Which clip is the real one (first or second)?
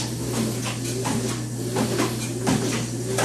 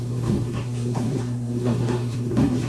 first